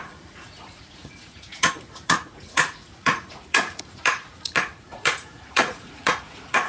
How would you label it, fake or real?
fake